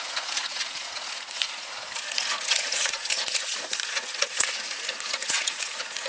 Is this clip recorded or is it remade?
remade